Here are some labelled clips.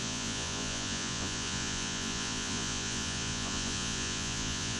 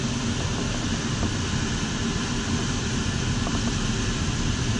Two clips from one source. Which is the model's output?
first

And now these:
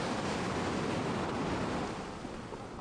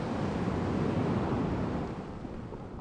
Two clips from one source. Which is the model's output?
second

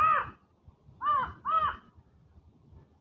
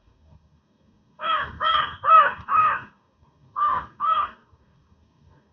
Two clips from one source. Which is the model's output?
second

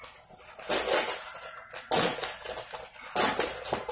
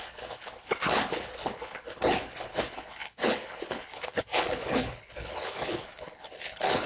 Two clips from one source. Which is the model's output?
second